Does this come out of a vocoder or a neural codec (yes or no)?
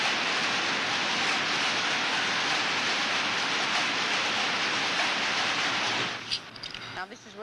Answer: no